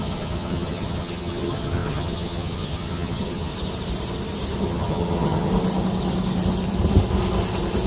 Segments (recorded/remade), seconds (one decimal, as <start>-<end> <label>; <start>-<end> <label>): 0.0-3.5 remade; 3.5-4.6 recorded; 4.6-5.5 remade; 5.5-7.9 recorded